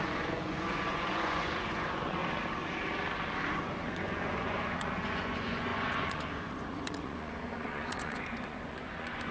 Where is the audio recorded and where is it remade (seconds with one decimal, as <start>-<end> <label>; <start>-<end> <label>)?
0.0-2.2 remade; 2.2-3.5 recorded; 3.5-9.3 remade